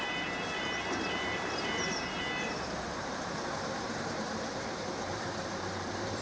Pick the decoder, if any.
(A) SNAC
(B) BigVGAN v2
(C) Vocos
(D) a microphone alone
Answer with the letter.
B